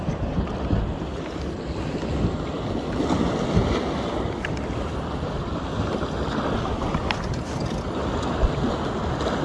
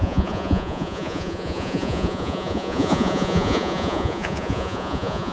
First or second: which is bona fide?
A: first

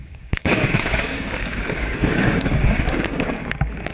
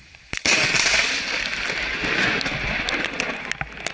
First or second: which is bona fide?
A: second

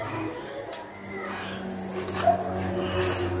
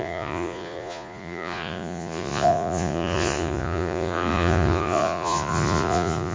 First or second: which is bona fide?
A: first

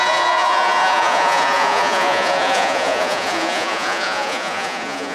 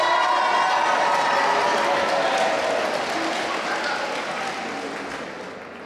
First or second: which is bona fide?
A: second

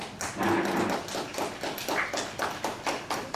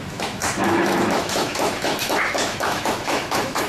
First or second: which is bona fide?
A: first